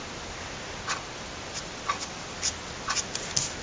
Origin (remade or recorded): recorded